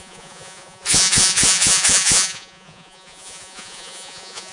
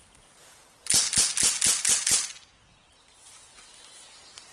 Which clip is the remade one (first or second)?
first